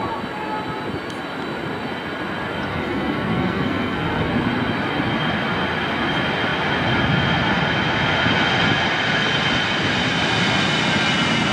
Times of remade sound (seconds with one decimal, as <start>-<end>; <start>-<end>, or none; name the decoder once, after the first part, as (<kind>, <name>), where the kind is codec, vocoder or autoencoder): 2.7-4.3 (codec, SNAC)